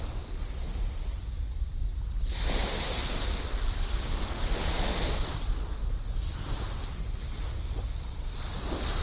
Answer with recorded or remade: recorded